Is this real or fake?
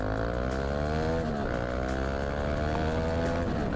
real